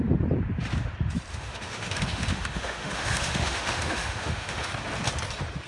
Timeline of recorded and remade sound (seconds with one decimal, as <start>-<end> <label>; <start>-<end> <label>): 0.0-1.3 recorded; 1.3-4.7 remade; 4.7-5.7 recorded